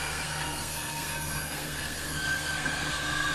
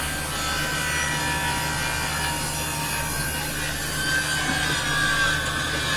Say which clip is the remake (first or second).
first